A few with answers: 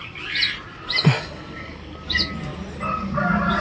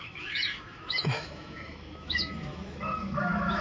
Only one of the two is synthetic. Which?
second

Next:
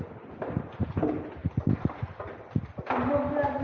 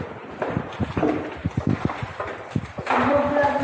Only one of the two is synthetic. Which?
second